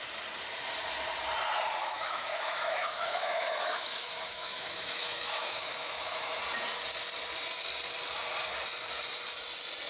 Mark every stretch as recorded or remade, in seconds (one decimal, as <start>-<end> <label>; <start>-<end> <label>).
0.0-1.8 recorded; 1.8-6.4 remade; 6.4-9.9 recorded

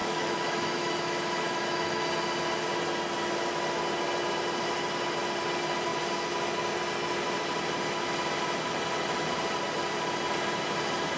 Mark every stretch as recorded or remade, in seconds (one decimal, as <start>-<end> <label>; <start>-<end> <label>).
0.0-2.1 remade; 2.1-11.2 recorded

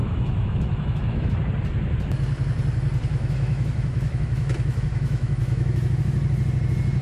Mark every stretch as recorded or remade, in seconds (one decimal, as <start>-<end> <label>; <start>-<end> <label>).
0.0-1.3 remade; 1.3-3.1 recorded; 3.1-6.0 remade; 6.0-7.0 recorded

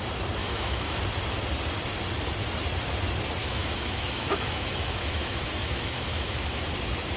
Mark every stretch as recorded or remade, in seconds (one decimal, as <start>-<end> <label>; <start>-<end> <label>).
0.0-0.4 recorded; 0.4-1.0 remade; 1.0-3.4 recorded; 3.4-6.6 remade; 6.6-7.2 recorded

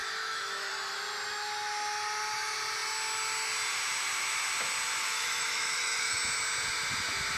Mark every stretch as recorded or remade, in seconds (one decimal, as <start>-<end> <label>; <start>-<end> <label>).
0.0-0.7 remade; 0.7-5.0 recorded; 5.0-6.2 remade; 6.2-7.4 recorded

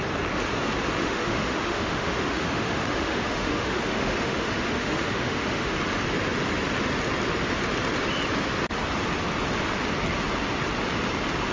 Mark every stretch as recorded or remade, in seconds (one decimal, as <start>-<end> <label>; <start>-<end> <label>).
0.0-1.0 recorded; 1.0-5.7 remade; 5.7-11.5 recorded

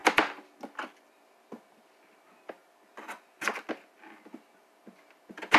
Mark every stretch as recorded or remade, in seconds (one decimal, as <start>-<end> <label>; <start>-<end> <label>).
0.0-5.6 recorded

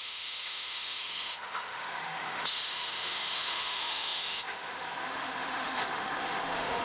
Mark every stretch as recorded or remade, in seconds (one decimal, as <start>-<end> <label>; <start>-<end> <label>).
0.0-6.8 remade